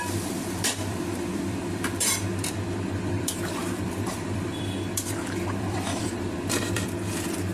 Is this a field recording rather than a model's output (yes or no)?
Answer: no